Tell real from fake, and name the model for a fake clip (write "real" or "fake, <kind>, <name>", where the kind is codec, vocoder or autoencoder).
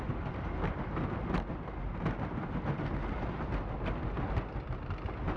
real